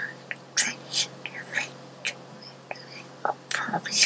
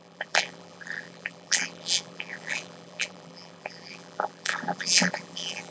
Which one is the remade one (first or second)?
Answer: second